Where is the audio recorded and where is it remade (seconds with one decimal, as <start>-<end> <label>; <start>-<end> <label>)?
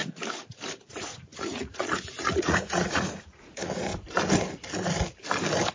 0.0-0.8 recorded; 0.8-3.9 remade; 3.9-5.7 recorded